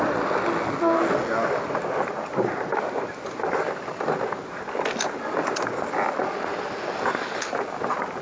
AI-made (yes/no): no